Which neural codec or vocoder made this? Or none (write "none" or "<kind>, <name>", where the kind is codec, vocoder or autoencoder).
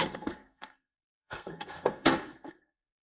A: codec, SNAC